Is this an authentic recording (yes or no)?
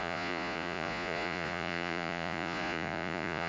no